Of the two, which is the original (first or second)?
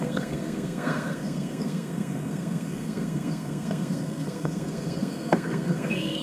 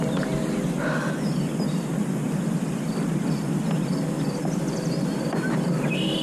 second